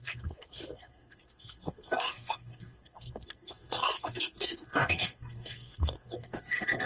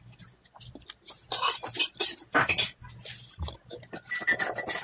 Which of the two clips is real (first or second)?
second